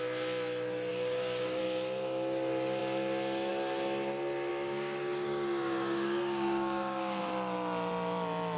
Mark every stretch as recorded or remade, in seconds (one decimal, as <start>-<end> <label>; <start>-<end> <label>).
0.0-0.9 recorded; 0.9-1.6 remade; 1.6-4.5 recorded; 4.5-7.2 remade; 7.2-8.6 recorded